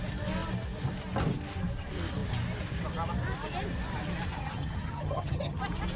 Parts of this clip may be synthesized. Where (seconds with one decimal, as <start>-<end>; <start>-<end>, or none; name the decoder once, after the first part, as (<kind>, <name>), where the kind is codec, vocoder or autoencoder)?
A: 4.3-5.6 (vocoder, HiFi-GAN)